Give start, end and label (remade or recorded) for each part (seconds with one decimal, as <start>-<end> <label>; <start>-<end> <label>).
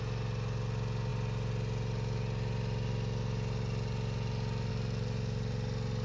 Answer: 0.0-6.0 recorded